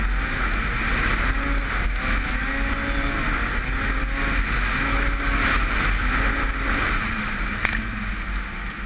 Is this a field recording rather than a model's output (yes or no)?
yes